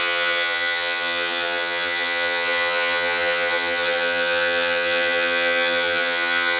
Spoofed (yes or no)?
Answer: yes